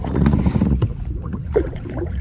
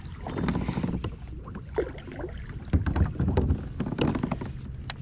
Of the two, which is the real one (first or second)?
second